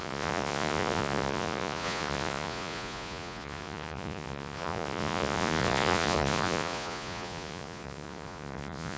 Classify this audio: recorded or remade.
remade